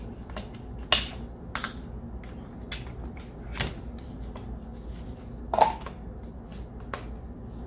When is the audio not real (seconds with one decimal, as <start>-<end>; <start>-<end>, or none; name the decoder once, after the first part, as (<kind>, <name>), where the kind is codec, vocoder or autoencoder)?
none